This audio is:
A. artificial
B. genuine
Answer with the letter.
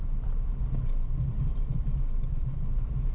A